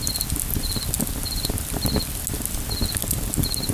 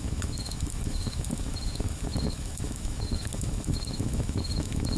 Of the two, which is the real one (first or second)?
first